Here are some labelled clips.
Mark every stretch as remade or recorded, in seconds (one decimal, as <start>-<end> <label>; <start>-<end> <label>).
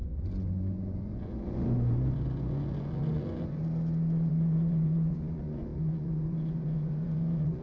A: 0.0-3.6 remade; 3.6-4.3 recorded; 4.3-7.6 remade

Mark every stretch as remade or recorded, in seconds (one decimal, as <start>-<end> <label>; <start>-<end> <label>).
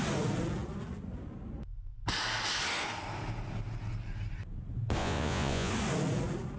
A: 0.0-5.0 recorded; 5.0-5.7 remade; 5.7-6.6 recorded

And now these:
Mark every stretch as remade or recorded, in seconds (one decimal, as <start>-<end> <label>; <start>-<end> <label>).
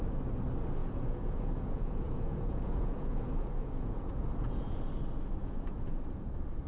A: 0.0-0.8 recorded; 0.8-4.8 remade; 4.8-5.4 recorded; 5.4-6.3 remade; 6.3-6.7 recorded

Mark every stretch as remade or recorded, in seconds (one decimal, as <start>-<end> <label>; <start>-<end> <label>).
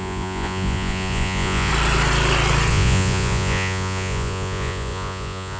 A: 0.0-1.7 remade; 1.7-2.7 recorded; 2.7-5.6 remade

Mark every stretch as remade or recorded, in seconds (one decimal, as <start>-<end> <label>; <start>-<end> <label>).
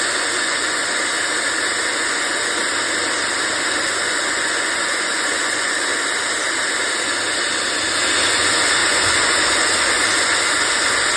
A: 0.0-1.0 remade; 1.0-1.9 recorded; 1.9-2.6 remade; 2.6-3.8 recorded; 3.8-5.9 remade; 5.9-8.3 recorded; 8.3-11.2 remade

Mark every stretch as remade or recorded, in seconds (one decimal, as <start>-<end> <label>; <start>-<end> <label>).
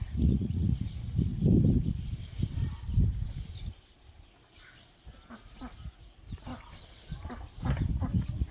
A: 0.0-1.3 remade; 1.3-5.4 recorded; 5.4-6.5 remade; 6.5-7.9 recorded; 7.9-8.5 remade